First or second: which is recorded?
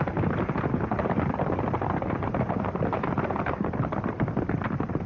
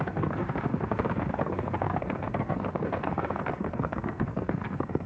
first